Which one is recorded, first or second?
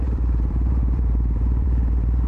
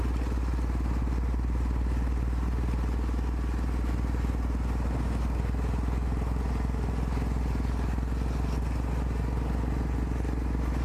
second